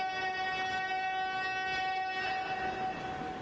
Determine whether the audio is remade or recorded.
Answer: recorded